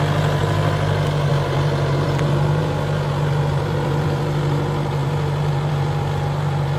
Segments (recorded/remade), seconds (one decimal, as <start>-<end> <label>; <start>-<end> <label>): 0.0-0.4 remade; 0.4-1.3 recorded; 1.3-6.8 remade

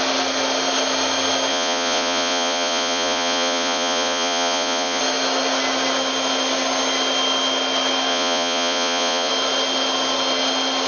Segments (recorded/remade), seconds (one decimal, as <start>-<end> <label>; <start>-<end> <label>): 0.0-1.5 recorded; 1.5-5.0 remade; 5.0-8.1 recorded; 8.1-9.3 remade; 9.3-10.9 recorded